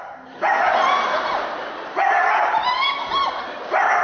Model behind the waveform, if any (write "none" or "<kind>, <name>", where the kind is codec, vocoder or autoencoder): vocoder, BigVGAN v2